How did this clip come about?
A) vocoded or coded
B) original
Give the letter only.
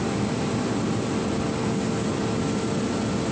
B